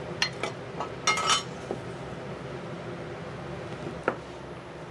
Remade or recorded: recorded